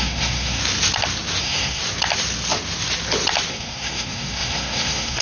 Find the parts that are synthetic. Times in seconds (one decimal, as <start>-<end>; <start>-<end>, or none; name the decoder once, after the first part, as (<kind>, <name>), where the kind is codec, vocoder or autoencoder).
0.0-0.6 (codec, SNAC); 1.4-1.8; 3.5-5.2